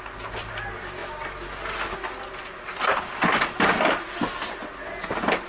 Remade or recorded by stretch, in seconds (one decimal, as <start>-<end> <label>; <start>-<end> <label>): 0.0-5.5 recorded